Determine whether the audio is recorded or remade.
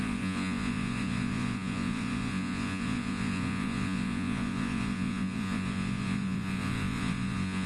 remade